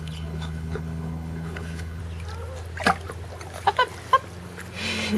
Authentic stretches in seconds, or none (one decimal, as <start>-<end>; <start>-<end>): 2.0-5.2